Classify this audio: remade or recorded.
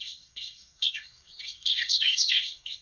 remade